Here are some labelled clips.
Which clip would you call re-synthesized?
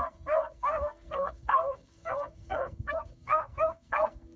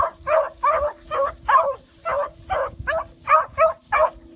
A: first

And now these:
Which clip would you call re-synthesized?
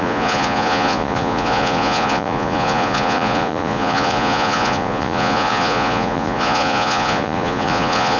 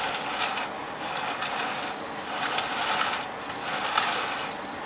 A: first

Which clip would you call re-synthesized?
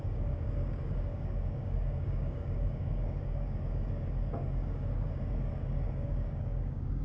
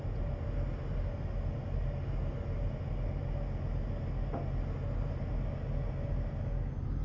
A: first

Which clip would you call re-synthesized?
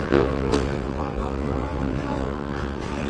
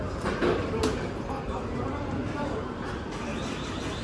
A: first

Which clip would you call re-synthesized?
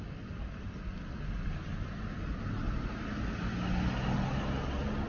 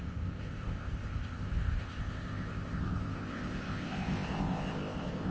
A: second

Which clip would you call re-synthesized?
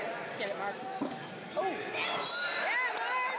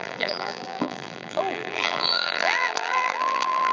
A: second